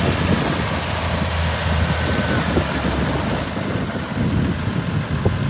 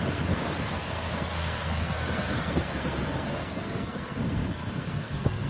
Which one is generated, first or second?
second